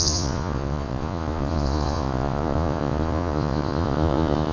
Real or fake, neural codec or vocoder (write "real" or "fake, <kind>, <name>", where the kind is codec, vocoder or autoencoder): fake, vocoder, Vocos